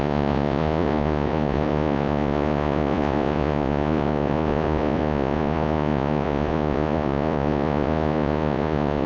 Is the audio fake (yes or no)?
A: yes